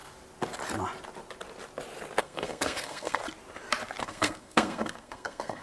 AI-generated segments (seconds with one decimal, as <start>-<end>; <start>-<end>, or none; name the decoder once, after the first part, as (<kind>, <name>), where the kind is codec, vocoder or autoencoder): 2.2-3.2 (codec, SNAC); 4.0-5.6